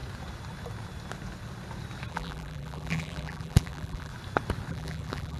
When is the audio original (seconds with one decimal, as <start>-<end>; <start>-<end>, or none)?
0.0-2.1; 4.1-4.7

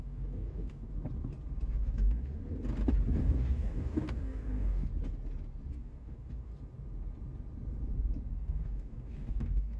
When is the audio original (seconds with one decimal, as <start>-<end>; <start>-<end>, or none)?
0.9-1.8; 2.4-3.2; 4.9-5.7; 6.5-8.3

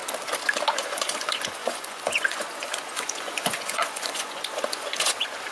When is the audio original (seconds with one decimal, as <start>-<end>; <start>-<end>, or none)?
0.0-0.7

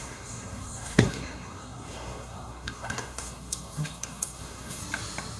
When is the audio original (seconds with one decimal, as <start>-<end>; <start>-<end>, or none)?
4.8-5.4

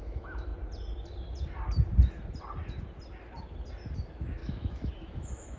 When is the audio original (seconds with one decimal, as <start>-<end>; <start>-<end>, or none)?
0.5-3.9

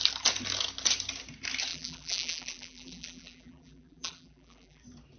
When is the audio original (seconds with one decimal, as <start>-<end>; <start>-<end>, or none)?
0.0-1.7; 4.8-5.2

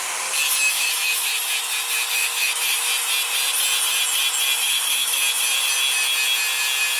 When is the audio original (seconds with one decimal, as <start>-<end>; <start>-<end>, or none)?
0.0-0.7; 1.3-2.1; 2.9-4.6; 5.2-7.0

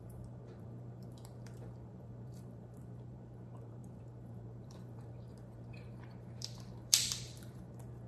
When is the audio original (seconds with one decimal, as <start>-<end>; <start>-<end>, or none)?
none